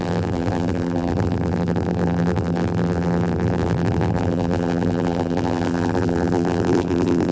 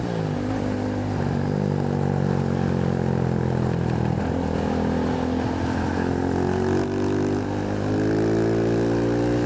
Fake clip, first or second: first